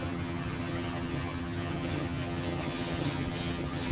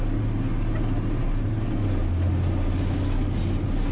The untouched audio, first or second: second